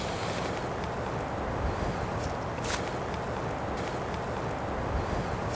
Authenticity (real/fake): real